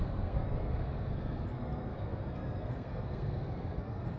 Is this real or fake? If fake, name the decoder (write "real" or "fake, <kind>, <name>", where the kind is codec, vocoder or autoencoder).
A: fake, codec, SNAC